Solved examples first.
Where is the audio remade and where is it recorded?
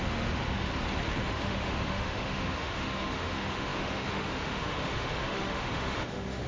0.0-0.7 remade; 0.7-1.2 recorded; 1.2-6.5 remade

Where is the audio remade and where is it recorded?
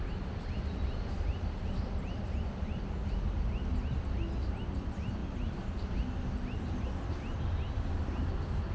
0.0-8.7 recorded